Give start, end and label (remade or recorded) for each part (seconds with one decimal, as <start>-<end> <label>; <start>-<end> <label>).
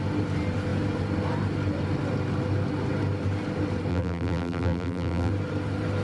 0.0-3.9 recorded; 3.9-5.3 remade; 5.3-6.0 recorded